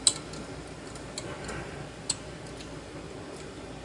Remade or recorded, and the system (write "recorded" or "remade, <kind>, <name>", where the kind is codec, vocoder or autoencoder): recorded